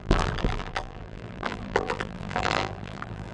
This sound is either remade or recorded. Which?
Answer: remade